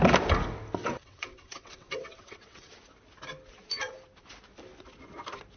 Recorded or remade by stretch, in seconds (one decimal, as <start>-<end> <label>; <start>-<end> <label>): 0.0-0.8 recorded; 0.8-2.8 remade; 2.8-5.6 recorded